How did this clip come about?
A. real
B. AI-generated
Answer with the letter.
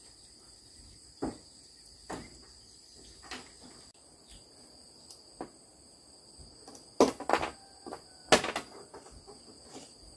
A